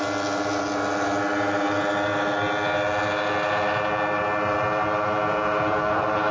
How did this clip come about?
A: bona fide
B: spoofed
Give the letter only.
A